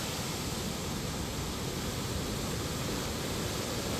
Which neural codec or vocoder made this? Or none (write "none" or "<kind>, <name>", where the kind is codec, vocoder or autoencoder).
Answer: none